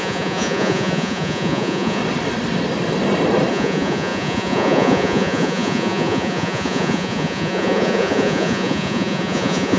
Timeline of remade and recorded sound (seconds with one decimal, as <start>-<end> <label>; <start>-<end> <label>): 0.0-2.0 remade; 2.0-3.5 recorded; 3.5-9.8 remade